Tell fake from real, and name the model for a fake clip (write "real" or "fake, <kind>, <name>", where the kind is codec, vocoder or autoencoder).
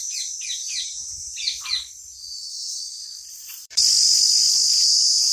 fake, vocoder, BigVGAN v2